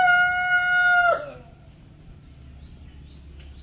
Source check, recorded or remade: recorded